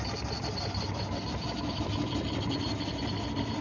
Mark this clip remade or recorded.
recorded